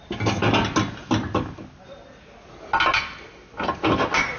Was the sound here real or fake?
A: real